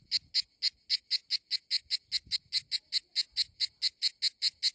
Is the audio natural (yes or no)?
yes